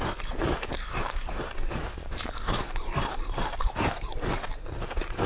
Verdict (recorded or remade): remade